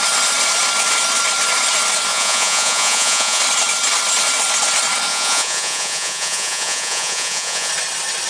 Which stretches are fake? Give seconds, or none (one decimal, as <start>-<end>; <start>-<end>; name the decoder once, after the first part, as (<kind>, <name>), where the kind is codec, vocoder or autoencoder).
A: 2.1-3.4 (vocoder, Vocos); 5.1-7.7